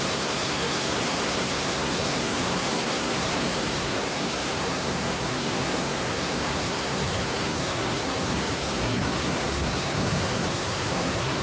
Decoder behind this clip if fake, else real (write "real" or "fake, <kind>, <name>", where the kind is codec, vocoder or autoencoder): fake, codec, SNAC